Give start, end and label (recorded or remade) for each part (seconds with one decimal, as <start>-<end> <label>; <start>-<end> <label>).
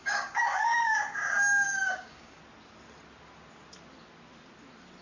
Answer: 0.0-2.4 remade; 2.4-5.0 recorded